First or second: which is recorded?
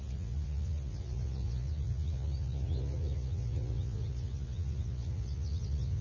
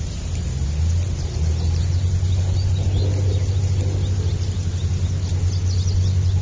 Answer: second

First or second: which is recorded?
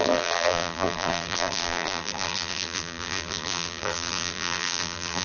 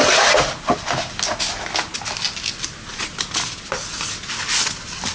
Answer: second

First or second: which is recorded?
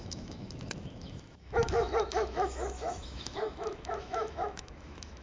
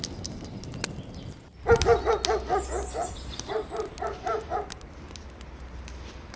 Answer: second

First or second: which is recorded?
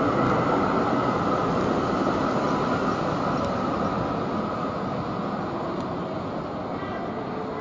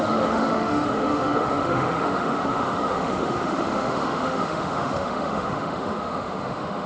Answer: first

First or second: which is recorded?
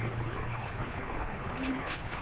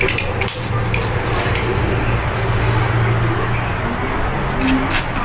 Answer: second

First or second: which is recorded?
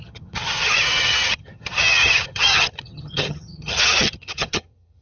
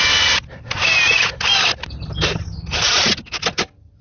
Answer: second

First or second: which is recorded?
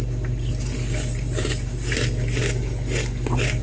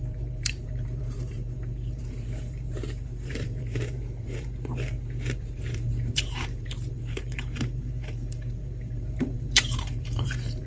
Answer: first